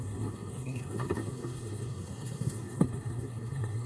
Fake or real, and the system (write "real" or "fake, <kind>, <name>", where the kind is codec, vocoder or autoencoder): fake, codec, SNAC